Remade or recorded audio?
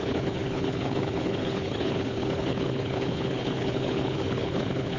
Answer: remade